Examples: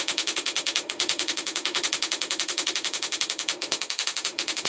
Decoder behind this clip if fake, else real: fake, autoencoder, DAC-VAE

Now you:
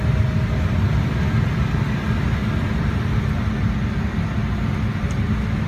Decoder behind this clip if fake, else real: real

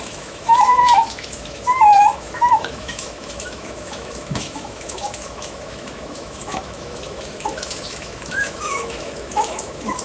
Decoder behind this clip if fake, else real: fake, autoencoder, DAC-VAE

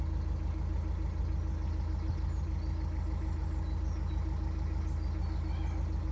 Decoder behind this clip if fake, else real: real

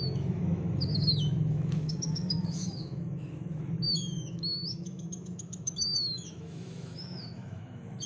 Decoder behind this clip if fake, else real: fake, autoencoder, DAC-VAE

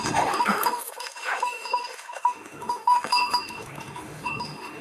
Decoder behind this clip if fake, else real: fake, autoencoder, DAC-VAE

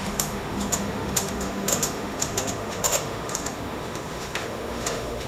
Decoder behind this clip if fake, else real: fake, autoencoder, DAC-VAE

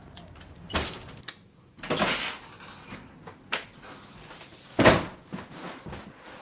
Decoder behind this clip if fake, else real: real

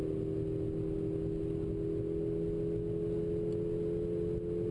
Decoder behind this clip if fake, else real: real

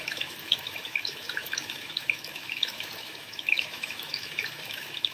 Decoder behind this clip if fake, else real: fake, autoencoder, DAC-VAE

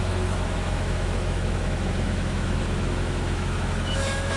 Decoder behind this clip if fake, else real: fake, autoencoder, DAC-VAE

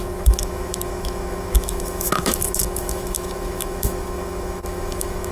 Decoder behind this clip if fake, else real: fake, autoencoder, DAC-VAE